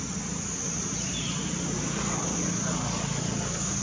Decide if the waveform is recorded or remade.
recorded